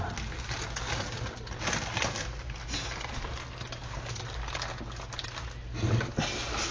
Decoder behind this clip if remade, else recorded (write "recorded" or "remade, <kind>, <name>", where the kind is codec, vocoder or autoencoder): recorded